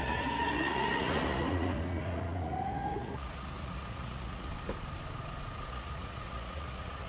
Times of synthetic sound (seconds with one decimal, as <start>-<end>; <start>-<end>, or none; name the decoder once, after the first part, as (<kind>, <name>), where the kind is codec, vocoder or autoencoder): 0.0-4.5 (vocoder, Vocos); 5.7-7.1